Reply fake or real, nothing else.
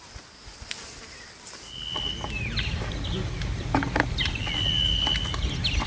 real